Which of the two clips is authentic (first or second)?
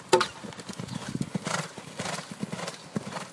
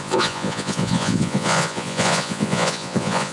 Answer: first